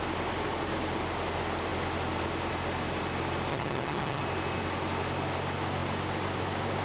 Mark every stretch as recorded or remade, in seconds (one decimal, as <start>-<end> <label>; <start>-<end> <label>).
0.0-3.5 recorded; 3.5-4.2 remade; 4.2-6.8 recorded